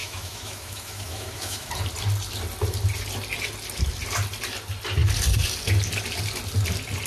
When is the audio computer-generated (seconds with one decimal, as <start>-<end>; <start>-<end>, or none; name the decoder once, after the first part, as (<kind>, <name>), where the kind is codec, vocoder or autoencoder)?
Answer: 0.0-1.7 (autoencoder, DAC-VAE)